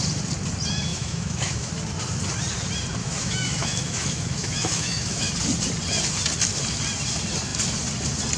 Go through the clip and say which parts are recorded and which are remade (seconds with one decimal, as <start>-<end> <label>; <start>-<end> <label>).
0.0-0.9 recorded; 0.9-1.7 remade; 1.7-3.0 recorded; 3.0-5.3 remade; 5.3-8.4 recorded